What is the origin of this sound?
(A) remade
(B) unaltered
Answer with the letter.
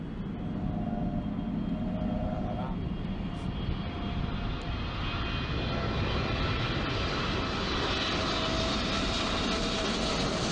B